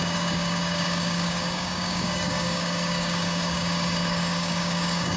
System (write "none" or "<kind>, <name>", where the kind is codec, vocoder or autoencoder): codec, DAC